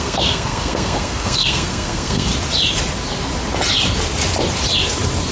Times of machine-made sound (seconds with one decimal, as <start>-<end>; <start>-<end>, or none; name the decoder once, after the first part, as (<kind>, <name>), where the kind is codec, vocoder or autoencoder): 0.0-2.3 (codec, SNAC)